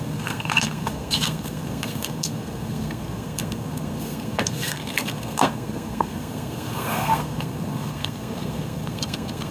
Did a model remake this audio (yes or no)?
yes